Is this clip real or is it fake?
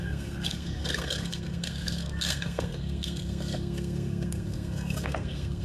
fake